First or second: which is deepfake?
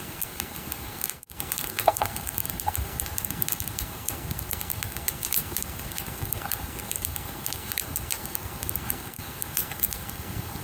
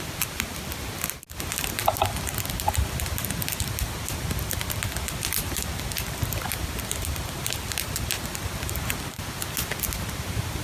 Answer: first